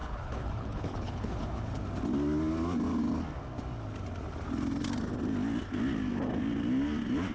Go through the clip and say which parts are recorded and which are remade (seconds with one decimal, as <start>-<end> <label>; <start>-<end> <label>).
0.0-1.8 remade; 1.8-7.3 recorded